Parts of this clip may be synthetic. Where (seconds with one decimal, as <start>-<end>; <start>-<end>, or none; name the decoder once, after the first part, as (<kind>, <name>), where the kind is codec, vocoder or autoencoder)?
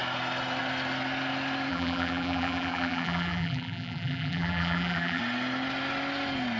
1.7-5.2 (vocoder, BigVGAN v2)